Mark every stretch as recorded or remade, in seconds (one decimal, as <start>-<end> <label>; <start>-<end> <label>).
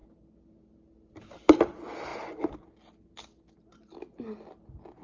0.0-5.0 recorded